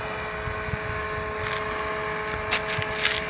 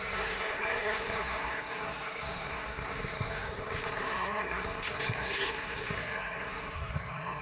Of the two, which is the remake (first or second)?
second